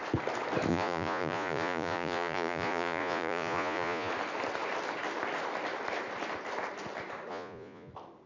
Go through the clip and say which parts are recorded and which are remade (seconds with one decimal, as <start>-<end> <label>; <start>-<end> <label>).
0.0-0.7 recorded; 0.7-4.1 remade; 4.1-7.3 recorded; 7.3-7.9 remade; 7.9-8.3 recorded